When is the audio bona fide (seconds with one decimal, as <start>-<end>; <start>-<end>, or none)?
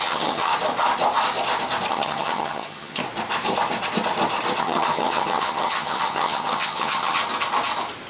0.5-1.9; 3.0-4.6; 7.2-8.1